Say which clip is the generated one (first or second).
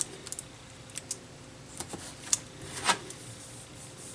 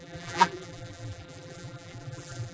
second